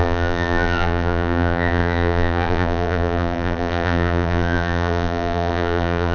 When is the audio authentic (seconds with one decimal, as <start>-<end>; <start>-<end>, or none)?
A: none